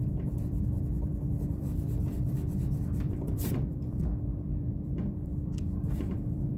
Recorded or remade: remade